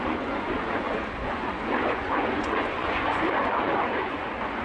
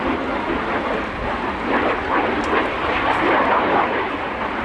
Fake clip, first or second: first